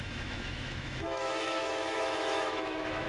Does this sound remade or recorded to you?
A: remade